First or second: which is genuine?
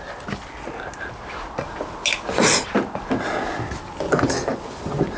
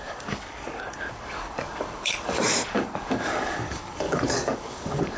first